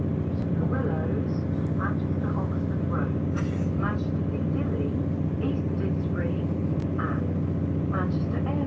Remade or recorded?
recorded